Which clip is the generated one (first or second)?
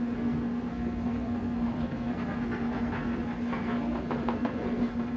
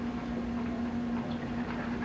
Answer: first